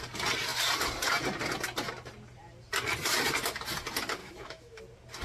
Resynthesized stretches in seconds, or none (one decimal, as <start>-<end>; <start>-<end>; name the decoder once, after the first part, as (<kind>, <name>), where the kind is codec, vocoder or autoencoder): 4.2-4.8 (autoencoder, DAC-VAE)